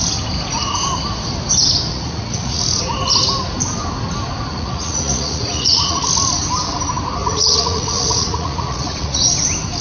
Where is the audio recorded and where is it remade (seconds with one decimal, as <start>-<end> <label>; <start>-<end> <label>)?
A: 0.0-1.9 recorded; 1.9-2.6 remade; 2.6-4.5 recorded; 4.5-6.1 remade; 6.1-7.2 recorded; 7.2-9.2 remade; 9.2-9.8 recorded